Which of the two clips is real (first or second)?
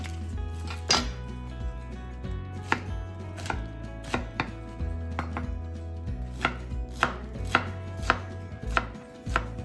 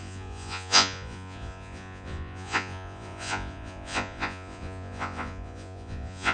first